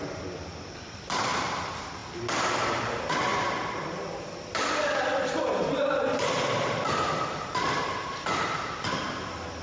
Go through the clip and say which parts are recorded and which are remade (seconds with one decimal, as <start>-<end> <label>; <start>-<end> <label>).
0.0-2.0 remade; 2.0-2.6 recorded; 2.6-9.6 remade